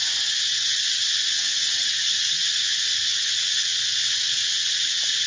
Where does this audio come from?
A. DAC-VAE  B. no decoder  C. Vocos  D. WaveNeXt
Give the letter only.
D